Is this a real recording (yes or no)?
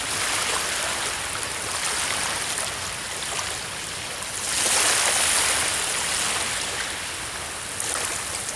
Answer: yes